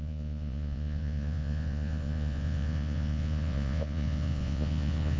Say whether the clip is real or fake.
fake